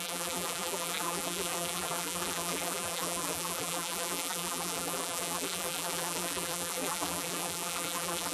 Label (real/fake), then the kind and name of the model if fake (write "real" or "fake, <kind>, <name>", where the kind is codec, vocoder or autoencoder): fake, vocoder, BigVGAN v2